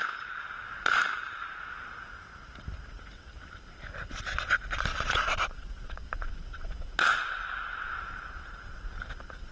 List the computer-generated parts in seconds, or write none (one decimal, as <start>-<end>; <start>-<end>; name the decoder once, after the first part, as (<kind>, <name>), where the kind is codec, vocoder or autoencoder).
4.9-6.0 (vocoder, Vocos)